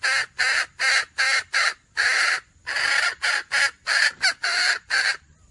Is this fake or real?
real